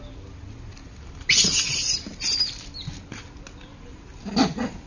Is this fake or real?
real